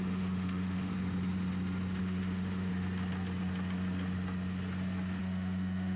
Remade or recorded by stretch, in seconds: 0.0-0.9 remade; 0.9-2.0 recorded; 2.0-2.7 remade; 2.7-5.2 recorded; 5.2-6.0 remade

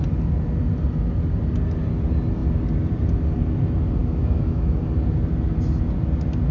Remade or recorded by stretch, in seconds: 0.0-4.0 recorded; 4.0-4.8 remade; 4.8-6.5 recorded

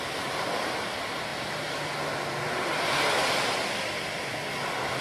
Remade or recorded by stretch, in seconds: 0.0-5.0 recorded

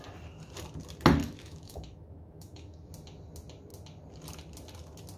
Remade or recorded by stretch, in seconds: 0.0-1.2 recorded; 1.2-2.9 remade; 2.9-5.2 recorded